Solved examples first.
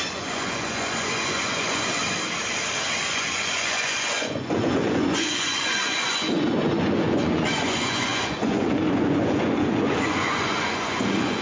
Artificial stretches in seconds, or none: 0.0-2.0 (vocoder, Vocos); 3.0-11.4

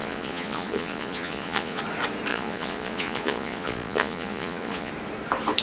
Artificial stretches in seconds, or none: 0.0-1.8 (vocoder, Vocos); 2.3-4.9

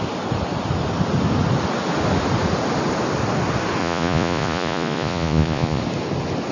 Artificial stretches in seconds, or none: 3.8-5.8 (vocoder, Vocos)

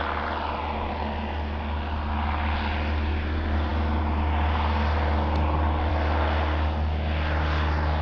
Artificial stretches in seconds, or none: none

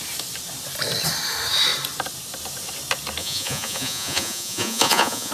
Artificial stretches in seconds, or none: 3.2-5.3 (vocoder, Vocos)